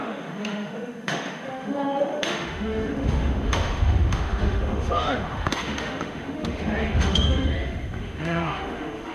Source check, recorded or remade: remade